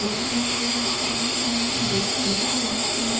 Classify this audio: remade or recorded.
remade